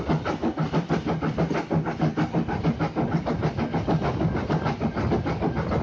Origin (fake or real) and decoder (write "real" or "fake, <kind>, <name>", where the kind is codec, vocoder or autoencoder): real